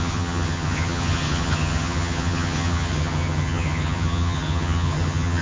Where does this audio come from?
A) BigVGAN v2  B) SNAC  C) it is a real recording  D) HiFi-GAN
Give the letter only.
D